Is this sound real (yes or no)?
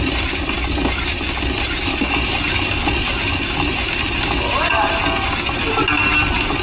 yes